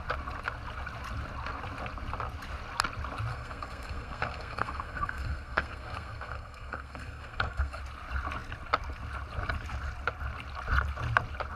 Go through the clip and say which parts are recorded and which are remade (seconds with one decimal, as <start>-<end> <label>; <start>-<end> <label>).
0.0-3.3 recorded; 3.3-7.8 remade; 7.8-11.6 recorded